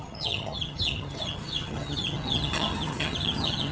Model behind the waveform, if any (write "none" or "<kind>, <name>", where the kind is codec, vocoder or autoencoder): vocoder, HiFi-GAN